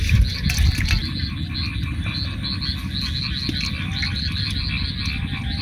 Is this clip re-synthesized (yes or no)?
no